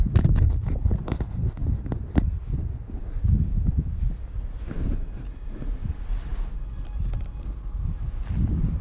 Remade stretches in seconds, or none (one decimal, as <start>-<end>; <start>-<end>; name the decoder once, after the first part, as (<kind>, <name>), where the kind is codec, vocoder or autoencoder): none